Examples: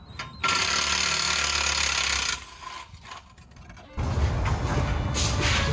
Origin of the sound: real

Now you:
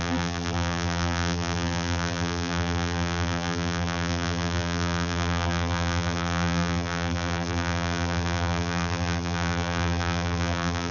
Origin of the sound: fake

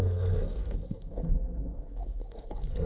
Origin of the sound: fake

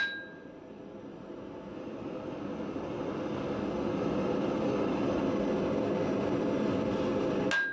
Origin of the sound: real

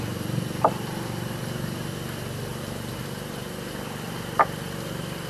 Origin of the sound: real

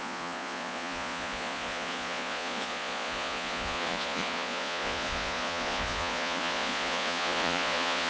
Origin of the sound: fake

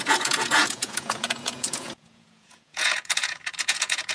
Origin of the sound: fake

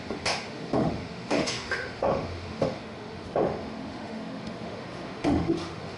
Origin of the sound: fake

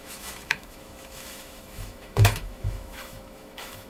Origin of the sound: fake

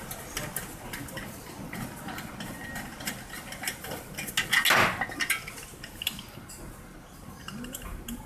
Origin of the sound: real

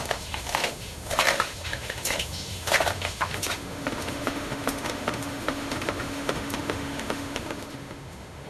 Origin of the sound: fake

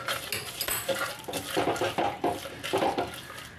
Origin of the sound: real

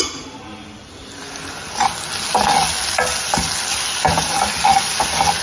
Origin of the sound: real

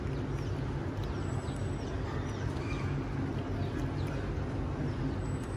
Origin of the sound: real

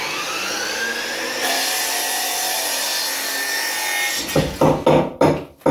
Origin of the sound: real